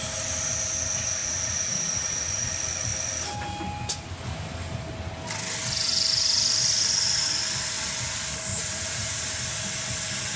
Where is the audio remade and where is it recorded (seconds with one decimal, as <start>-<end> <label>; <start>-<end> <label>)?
0.0-1.2 recorded; 1.2-2.5 remade; 2.5-8.5 recorded; 8.5-9.2 remade; 9.2-10.4 recorded